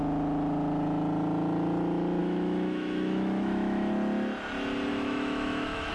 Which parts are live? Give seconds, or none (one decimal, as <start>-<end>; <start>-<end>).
0.0-2.2; 3.9-4.9